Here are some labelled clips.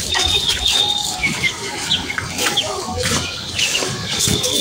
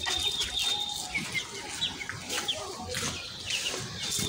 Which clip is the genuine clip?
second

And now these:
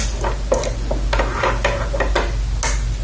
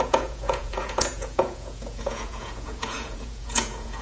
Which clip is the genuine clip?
first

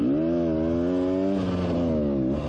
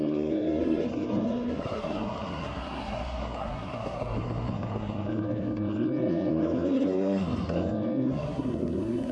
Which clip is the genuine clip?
first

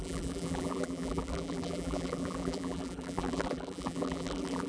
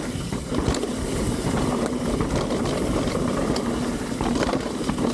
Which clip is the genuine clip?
second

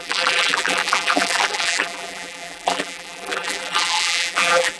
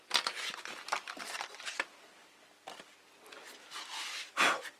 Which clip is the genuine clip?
second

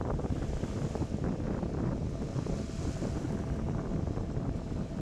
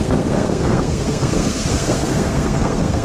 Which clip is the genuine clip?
first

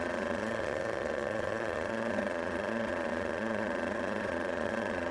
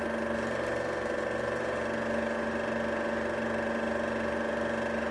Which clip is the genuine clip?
second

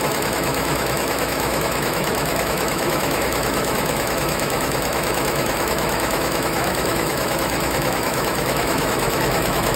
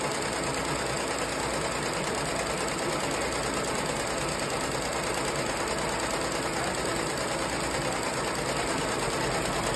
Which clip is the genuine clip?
second